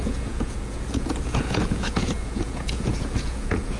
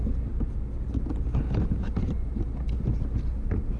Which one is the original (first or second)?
second